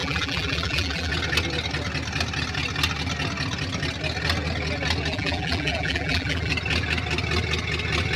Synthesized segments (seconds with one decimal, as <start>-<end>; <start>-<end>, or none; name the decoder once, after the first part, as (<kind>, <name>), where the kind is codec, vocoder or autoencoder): 0.0-1.1 (vocoder, BigVGAN v2); 5.1-6.5